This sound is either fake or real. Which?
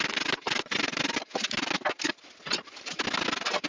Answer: real